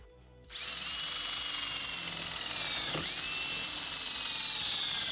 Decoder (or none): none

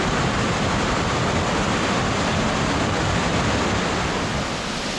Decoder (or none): none